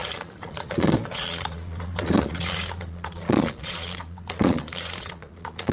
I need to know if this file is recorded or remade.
remade